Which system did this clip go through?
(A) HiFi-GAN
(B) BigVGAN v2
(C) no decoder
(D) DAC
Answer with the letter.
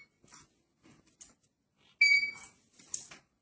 C